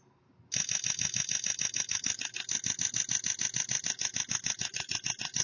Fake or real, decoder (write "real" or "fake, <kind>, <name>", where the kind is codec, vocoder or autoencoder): real